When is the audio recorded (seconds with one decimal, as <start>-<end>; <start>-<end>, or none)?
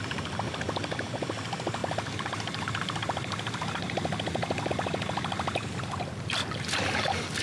0.0-7.4